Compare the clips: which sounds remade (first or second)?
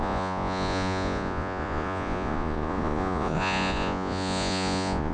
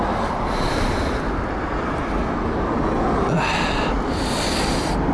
first